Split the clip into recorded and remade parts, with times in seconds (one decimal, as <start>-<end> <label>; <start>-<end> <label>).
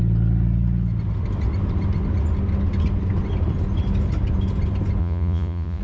0.0-5.0 recorded; 5.0-5.8 remade